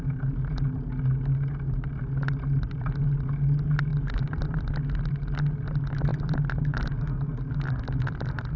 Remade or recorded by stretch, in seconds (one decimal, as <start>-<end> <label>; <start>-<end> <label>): 0.0-8.6 recorded